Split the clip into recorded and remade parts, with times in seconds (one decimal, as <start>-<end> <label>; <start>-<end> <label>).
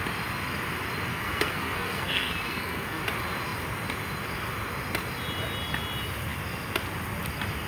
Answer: 0.0-1.1 recorded; 1.1-3.0 remade; 3.0-7.7 recorded